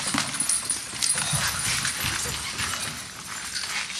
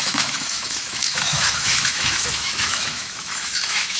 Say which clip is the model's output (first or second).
second